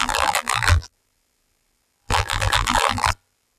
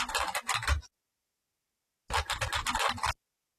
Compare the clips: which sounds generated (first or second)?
first